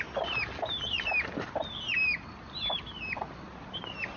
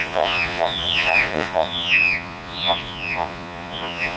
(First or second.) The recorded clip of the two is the first